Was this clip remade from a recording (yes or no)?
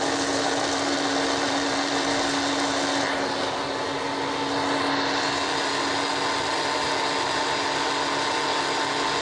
no